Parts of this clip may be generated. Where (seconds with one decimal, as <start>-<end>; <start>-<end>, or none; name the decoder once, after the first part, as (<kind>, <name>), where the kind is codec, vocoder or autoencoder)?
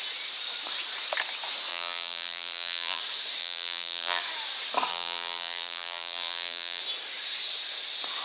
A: 1.7-3.0 (vocoder, BigVGAN v2); 3.4-4.2; 4.9-6.8